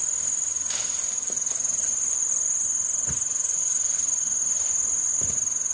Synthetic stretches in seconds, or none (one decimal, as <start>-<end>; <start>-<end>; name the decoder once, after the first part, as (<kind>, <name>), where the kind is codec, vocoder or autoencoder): none